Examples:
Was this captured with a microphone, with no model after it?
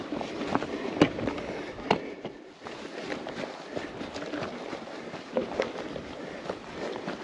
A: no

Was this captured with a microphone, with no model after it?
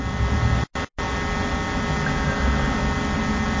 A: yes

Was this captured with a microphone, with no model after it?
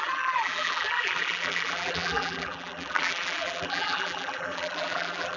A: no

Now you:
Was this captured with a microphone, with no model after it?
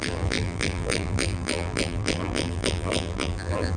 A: no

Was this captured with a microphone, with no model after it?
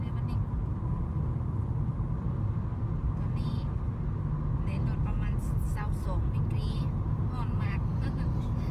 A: yes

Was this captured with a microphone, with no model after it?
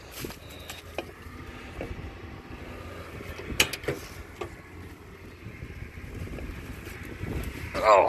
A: yes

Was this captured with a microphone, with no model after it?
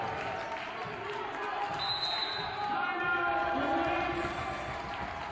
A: yes